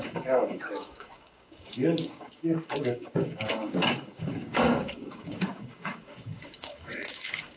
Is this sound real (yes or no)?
no